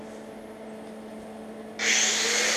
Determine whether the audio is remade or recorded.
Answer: recorded